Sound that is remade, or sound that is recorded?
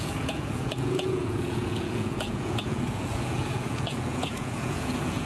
remade